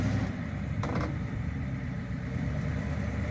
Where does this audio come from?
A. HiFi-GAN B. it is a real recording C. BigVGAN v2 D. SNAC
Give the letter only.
C